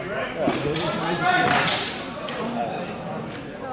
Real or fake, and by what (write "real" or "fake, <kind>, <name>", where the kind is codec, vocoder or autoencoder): real